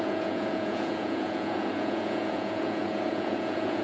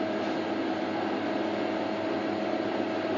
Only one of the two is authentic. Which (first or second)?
second